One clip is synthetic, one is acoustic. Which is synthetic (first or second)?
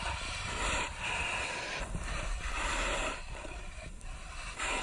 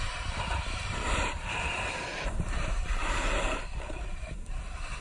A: second